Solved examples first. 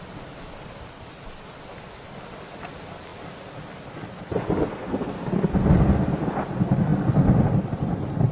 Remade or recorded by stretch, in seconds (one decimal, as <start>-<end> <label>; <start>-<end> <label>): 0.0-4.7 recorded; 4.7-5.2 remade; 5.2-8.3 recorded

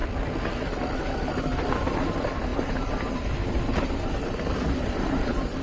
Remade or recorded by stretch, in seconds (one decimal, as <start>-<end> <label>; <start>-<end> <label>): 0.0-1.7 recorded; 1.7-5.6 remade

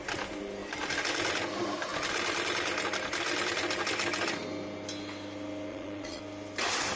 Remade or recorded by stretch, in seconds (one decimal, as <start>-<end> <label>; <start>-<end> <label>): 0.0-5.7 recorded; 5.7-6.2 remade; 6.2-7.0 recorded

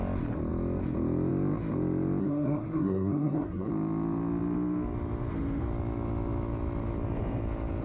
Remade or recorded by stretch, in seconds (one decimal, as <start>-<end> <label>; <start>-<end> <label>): 0.0-2.2 recorded; 2.2-3.7 remade; 3.7-7.8 recorded

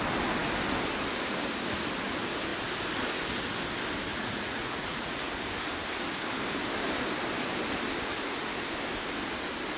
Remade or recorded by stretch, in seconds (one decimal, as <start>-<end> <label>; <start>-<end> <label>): 0.0-4.1 recorded; 4.1-5.3 remade; 5.3-9.8 recorded

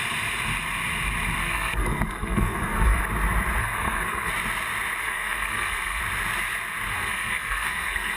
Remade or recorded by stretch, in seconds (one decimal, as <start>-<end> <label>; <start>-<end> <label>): 0.0-1.4 recorded; 1.4-3.0 remade; 3.0-3.6 recorded; 3.6-4.3 remade; 4.3-5.0 recorded; 5.0-6.0 remade; 6.0-6.9 recorded; 6.9-8.2 remade

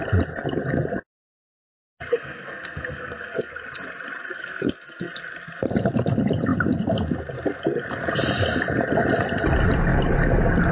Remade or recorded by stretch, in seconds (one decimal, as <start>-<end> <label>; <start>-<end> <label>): 0.0-2.1 recorded; 2.1-3.5 remade; 3.5-4.2 recorded; 4.2-5.1 remade; 5.1-10.7 recorded

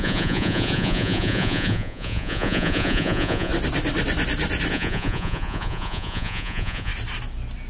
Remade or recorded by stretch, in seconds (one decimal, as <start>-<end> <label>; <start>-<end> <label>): 0.0-3.5 remade; 3.5-4.7 recorded; 4.7-6.9 remade; 6.9-7.7 recorded